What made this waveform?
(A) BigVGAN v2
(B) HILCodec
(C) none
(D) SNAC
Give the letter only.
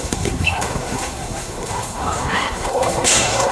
D